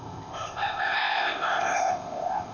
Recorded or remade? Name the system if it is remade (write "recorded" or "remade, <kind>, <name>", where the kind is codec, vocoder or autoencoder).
remade, codec, ZipCodec